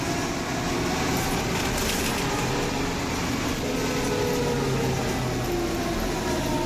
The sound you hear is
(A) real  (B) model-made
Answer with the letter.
A